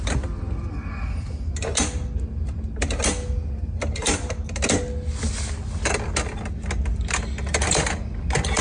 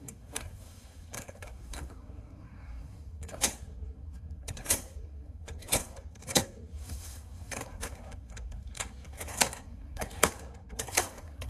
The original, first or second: first